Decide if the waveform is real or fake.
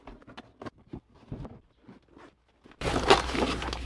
real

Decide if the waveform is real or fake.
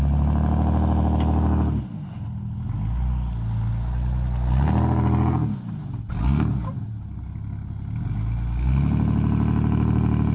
real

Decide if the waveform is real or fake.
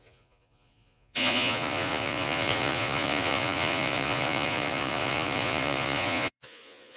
fake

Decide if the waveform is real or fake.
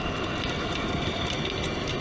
real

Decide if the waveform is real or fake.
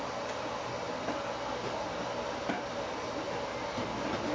real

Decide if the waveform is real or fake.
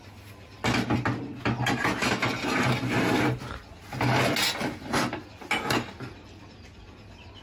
real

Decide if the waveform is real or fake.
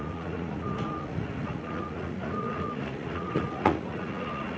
fake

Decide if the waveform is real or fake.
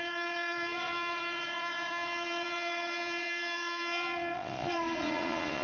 fake